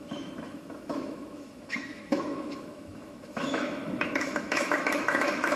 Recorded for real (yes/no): no